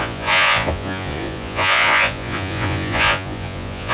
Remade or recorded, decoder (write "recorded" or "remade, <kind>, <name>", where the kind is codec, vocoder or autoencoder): remade, vocoder, Vocos